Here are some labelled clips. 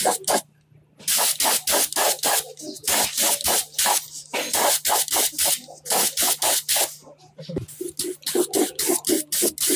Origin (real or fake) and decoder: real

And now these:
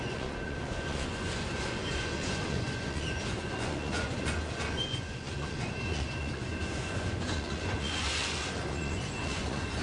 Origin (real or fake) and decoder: fake, vocoder, Vocos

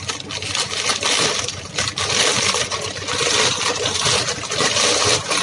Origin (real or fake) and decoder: real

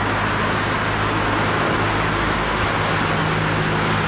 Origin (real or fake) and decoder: real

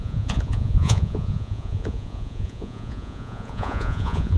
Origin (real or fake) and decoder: fake, vocoder, Vocos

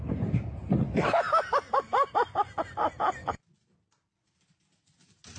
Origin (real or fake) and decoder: real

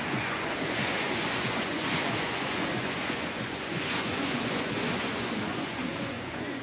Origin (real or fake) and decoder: fake, vocoder, Vocos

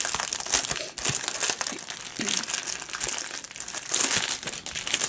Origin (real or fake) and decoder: real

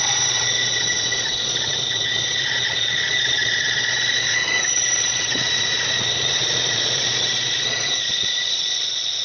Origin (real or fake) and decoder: fake, vocoder, Vocos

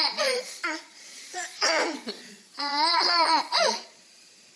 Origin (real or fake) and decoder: fake, vocoder, Vocos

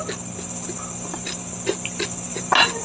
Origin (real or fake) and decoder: real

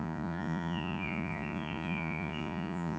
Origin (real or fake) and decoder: fake, vocoder, Vocos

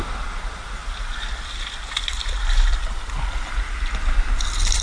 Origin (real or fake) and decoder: real